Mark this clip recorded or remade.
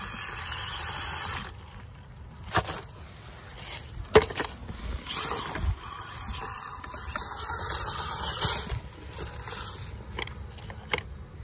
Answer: recorded